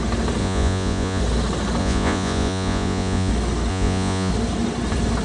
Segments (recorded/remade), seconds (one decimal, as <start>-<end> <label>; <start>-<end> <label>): 0.0-0.4 recorded; 0.4-1.2 remade; 1.2-1.8 recorded; 1.8-3.3 remade; 3.3-3.7 recorded; 3.7-4.3 remade; 4.3-5.2 recorded